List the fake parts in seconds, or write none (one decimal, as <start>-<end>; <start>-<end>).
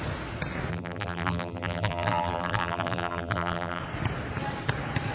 0.7-3.8